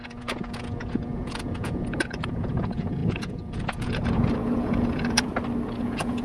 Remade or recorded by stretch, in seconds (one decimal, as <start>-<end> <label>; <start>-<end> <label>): 0.0-5.3 remade; 5.3-5.8 recorded; 5.8-6.2 remade